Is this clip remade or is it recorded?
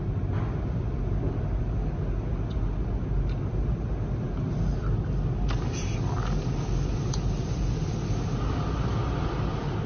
recorded